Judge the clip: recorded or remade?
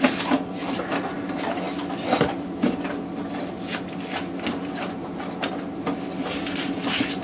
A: recorded